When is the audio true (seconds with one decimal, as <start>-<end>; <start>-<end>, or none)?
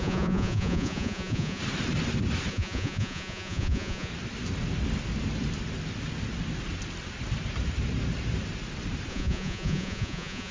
1.6-2.5; 4.1-9.1